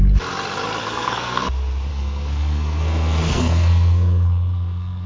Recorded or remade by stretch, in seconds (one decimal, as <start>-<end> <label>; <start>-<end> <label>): 0.0-0.8 recorded; 0.8-1.5 remade; 1.5-1.9 recorded; 1.9-5.1 remade